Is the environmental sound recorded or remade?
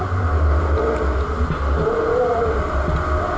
recorded